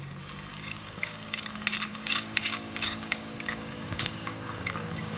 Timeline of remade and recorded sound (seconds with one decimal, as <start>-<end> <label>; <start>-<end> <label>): 0.0-0.5 recorded; 0.5-1.4 remade; 1.4-1.9 recorded; 1.9-5.2 remade